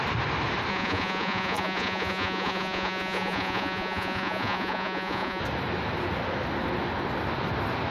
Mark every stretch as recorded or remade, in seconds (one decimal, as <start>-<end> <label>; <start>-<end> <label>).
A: 0.0-0.7 recorded; 0.7-5.4 remade; 5.4-7.9 recorded